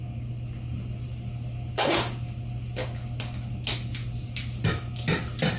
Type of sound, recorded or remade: recorded